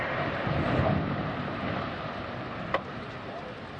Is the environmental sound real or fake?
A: real